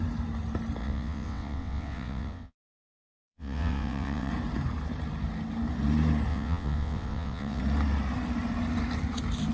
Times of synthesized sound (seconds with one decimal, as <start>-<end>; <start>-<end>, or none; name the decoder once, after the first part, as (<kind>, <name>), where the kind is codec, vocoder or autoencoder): 0.8-4.3 (vocoder, WaveNeXt); 6.3-7.6

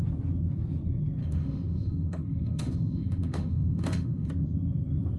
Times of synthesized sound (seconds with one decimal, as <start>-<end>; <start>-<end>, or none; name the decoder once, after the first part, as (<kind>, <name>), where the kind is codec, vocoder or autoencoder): 1.2-4.3 (autoencoder, DAC-VAE)

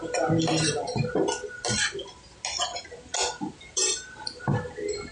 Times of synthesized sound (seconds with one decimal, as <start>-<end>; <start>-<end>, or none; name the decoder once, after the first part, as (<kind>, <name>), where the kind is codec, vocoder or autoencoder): none

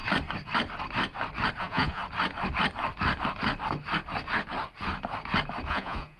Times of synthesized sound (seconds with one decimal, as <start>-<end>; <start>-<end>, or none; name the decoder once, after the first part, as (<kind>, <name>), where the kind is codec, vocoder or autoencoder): 1.6-2.0 (vocoder, Vocos); 5.7-6.2

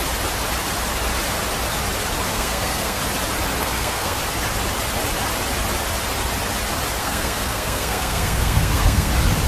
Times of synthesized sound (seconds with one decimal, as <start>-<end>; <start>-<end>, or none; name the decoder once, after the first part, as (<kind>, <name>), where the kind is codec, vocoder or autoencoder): 2.3-3.0 (codec, SNAC); 3.6-4.2; 7.0-9.1